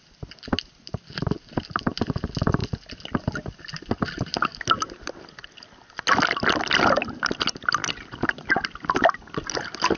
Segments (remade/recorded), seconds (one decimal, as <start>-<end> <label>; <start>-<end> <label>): 0.0-10.0 recorded